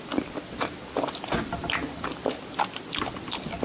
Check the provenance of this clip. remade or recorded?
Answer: recorded